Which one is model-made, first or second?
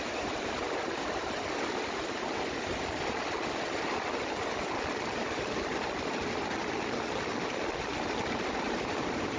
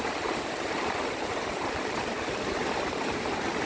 second